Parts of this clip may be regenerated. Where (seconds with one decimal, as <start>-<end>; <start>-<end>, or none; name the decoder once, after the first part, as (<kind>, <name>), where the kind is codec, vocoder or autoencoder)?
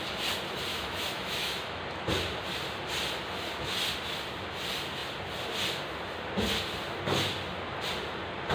0.7-1.8 (autoencoder, DAC-VAE)